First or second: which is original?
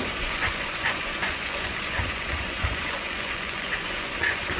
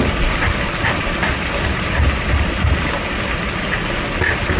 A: second